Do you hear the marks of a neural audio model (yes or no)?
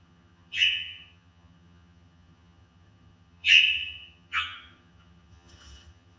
yes